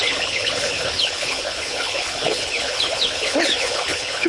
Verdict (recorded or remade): remade